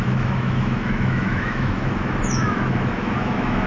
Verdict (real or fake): fake